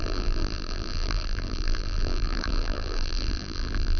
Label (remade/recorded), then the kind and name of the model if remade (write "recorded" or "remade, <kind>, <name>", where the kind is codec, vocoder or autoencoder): remade, vocoder, BigVGAN v2